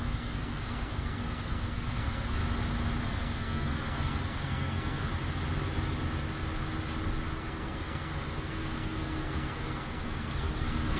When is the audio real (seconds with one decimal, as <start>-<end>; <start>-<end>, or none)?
2.4-3.0; 5.1-7.4

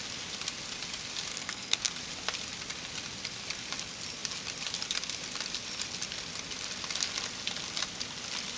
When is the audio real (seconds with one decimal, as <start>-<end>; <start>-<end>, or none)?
0.0-1.3; 1.9-8.6

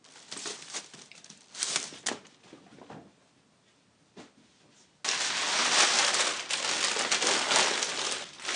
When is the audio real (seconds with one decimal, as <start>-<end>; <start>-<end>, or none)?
0.0-8.6